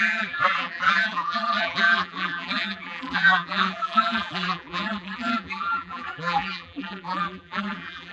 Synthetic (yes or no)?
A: yes